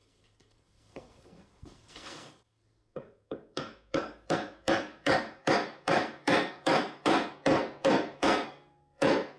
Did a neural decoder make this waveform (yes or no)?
yes